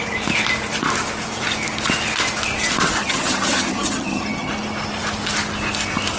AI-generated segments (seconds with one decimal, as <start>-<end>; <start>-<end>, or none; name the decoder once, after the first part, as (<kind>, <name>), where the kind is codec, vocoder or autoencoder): 3.0-4.5 (vocoder, HiFi-GAN)